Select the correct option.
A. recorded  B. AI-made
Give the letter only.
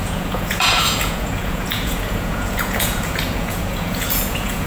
B